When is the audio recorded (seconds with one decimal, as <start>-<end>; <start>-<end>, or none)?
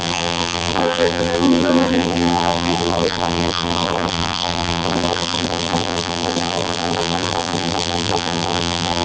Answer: none